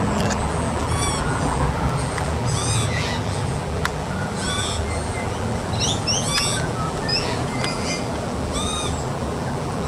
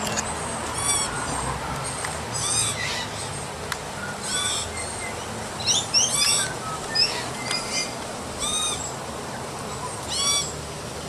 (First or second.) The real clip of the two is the second